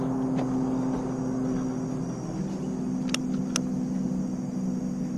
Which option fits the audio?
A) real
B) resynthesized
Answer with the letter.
A